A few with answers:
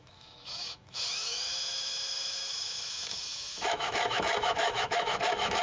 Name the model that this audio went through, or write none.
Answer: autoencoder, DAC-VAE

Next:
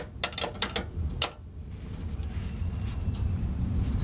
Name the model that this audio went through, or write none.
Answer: none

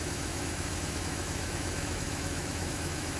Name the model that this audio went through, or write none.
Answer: autoencoder, DAC-VAE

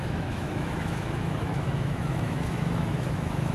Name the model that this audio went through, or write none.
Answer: autoencoder, DAC-VAE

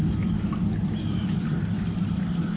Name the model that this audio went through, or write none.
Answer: none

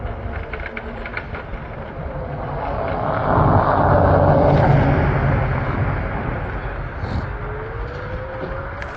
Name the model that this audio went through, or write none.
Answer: none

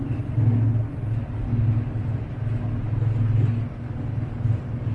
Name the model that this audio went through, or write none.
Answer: none